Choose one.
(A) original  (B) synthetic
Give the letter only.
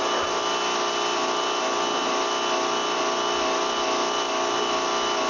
A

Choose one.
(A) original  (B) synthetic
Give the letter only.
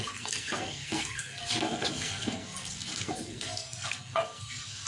B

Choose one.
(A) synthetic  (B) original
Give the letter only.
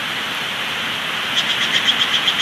B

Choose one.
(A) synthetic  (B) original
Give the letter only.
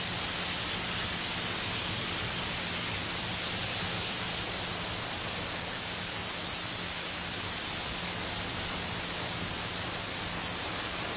B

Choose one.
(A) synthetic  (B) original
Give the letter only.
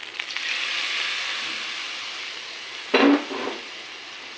B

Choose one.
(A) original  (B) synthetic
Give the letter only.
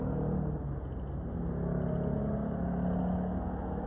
A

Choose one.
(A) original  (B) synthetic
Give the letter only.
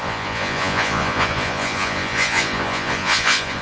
B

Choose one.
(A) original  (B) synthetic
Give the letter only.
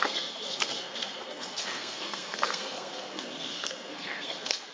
B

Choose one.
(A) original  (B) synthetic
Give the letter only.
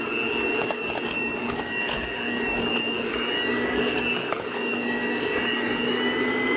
B